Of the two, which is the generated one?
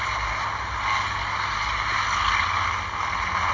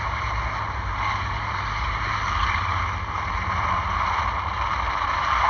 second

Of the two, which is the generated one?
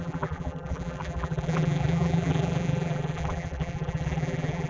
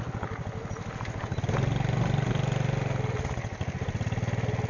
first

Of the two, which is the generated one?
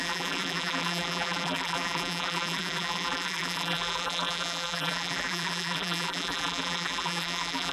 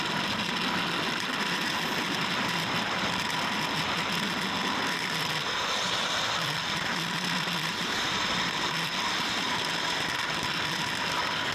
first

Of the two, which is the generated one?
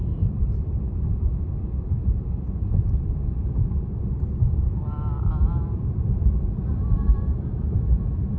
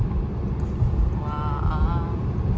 first